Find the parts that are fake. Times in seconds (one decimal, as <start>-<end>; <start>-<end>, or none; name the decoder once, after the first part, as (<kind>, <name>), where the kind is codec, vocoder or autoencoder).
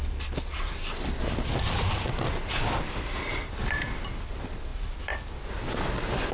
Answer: none